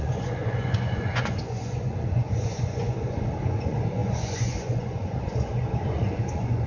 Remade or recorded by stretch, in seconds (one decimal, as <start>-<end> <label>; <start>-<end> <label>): 0.0-6.7 remade